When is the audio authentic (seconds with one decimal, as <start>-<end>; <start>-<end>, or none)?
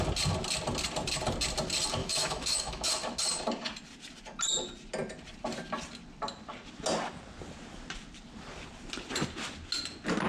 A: 0.0-2.0; 2.9-10.3